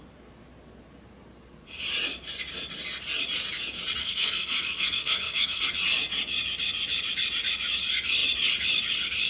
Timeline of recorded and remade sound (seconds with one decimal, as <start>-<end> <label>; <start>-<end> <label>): 0.0-4.0 recorded; 4.0-5.6 remade; 5.6-9.3 recorded